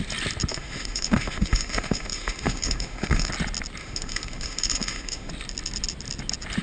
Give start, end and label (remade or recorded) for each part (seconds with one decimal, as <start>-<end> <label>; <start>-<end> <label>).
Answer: 0.0-0.5 recorded; 0.5-3.3 remade; 3.3-3.8 recorded; 3.8-5.3 remade; 5.3-6.6 recorded